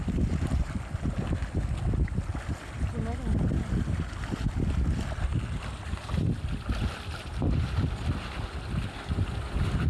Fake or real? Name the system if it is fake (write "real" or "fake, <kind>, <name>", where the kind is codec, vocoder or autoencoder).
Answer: real